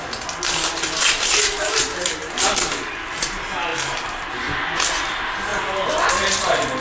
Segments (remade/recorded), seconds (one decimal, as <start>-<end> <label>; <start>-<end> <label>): 0.0-6.8 recorded